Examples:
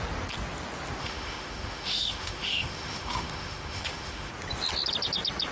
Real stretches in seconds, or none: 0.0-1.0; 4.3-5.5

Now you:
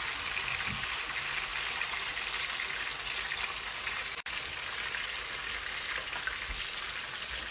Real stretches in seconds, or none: 0.0-1.5; 4.4-7.5

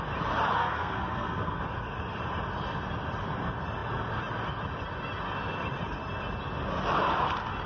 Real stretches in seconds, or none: 0.0-0.6; 1.6-7.7

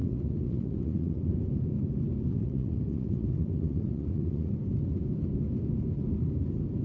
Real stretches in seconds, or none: 1.3-2.3; 4.5-6.8